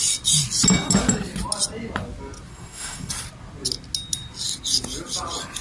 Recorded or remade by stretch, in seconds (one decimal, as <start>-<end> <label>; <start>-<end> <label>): 0.0-2.5 recorded; 2.5-3.1 remade; 3.1-5.6 recorded